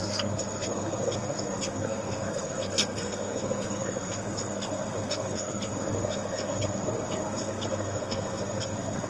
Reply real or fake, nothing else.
fake